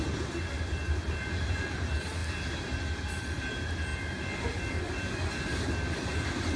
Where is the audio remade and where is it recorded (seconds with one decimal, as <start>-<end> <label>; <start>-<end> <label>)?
0.0-6.6 recorded

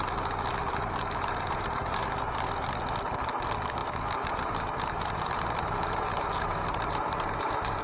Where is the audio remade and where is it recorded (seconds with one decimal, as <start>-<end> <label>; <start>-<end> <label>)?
0.0-0.6 recorded; 0.6-2.7 remade; 2.7-3.8 recorded; 3.8-7.8 remade

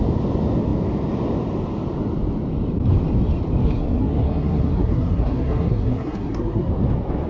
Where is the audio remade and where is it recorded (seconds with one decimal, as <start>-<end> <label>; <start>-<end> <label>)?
0.0-3.6 recorded; 3.6-6.7 remade; 6.7-7.3 recorded

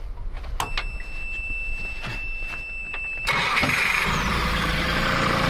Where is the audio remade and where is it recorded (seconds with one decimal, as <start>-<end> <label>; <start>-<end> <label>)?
0.0-2.8 recorded; 2.8-5.5 remade